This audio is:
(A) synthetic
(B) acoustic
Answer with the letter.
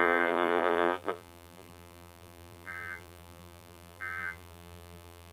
A